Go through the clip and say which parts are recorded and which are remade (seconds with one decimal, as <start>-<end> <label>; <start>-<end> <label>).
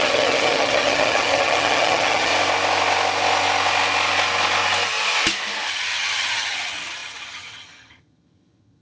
0.0-2.3 remade; 2.3-5.7 recorded; 5.7-8.8 remade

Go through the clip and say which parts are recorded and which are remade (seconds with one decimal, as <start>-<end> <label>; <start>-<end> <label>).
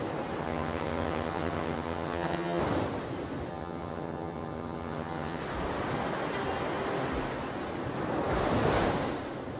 0.0-0.4 recorded; 0.4-2.6 remade; 2.6-3.5 recorded; 3.5-5.4 remade; 5.4-9.6 recorded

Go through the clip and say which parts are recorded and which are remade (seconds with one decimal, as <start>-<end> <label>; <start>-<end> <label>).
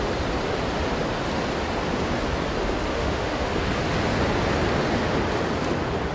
0.0-2.9 recorded; 2.9-3.5 remade; 3.5-6.1 recorded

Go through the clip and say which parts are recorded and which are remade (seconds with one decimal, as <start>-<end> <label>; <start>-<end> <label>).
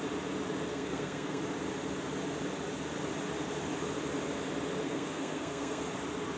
0.0-0.7 recorded; 0.7-1.4 remade; 1.4-4.8 recorded; 4.8-5.8 remade; 5.8-6.4 recorded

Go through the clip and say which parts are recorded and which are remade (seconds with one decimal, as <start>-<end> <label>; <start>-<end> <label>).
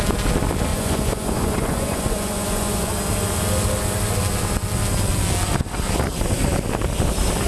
0.0-0.7 recorded; 0.7-2.9 remade; 2.9-7.5 recorded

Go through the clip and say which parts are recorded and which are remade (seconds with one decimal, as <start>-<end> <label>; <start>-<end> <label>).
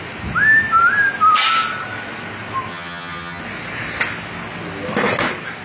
0.0-2.7 recorded; 2.7-3.4 remade; 3.4-5.6 recorded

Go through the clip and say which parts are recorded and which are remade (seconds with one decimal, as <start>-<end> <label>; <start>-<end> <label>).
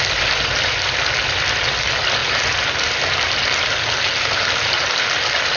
0.0-2.2 remade; 2.2-5.1 recorded; 5.1-5.6 remade